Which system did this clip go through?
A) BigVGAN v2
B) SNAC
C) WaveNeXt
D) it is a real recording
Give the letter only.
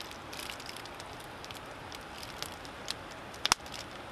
D